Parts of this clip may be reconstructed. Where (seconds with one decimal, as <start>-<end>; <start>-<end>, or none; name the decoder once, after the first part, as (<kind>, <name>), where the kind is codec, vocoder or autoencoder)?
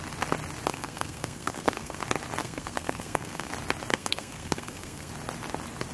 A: 0.7-2.0 (codec, SNAC); 2.4-3.5; 3.9-5.1